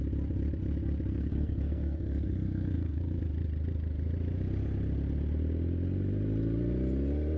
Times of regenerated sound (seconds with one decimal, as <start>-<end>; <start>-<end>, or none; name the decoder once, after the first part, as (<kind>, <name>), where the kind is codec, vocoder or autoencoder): 1.1-3.2 (codec, SNAC)